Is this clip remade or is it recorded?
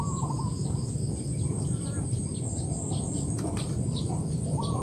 remade